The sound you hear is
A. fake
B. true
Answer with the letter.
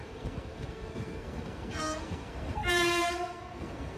A